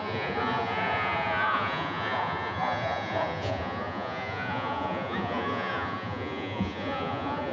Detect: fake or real fake